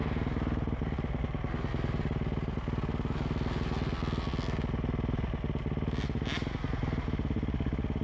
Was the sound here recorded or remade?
recorded